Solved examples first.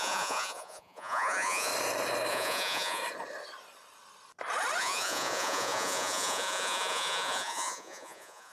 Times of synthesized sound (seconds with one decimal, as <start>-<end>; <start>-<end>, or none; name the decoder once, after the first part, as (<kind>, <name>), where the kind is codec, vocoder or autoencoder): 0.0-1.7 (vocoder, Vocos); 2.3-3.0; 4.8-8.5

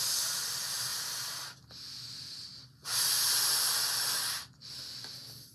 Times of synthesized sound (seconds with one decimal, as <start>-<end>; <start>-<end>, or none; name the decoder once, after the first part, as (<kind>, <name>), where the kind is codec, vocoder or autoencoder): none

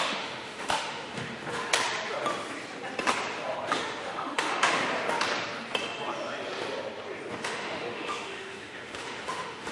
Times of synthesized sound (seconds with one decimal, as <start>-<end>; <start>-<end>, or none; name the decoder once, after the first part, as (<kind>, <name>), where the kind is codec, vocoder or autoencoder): 0.0-1.7 (autoencoder, DAC-VAE); 3.7-4.8; 7.3-9.7